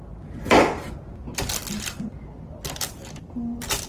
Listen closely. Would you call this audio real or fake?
real